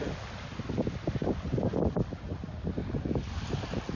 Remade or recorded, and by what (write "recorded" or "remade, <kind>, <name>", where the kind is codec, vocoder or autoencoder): recorded